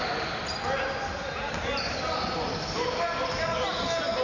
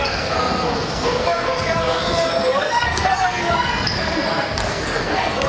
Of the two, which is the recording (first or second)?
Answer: first